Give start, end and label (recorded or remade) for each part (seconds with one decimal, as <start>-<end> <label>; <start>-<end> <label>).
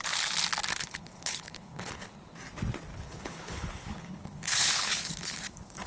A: 0.0-0.7 recorded; 0.7-2.1 remade; 2.1-2.9 recorded; 2.9-5.9 remade